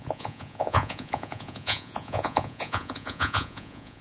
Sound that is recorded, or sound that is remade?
remade